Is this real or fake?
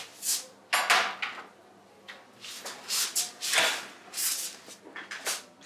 real